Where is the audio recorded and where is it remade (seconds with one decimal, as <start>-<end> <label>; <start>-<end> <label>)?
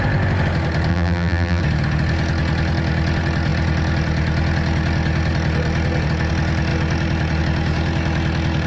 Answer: 0.0-0.9 recorded; 0.9-1.6 remade; 1.6-8.7 recorded